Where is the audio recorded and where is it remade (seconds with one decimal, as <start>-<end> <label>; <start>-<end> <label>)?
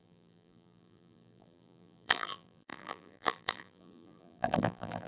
0.0-5.1 remade